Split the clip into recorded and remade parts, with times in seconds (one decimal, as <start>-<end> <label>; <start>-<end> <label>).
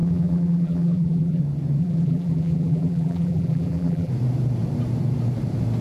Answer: 0.0-1.4 remade; 1.4-1.8 recorded; 1.8-4.1 remade; 4.1-5.8 recorded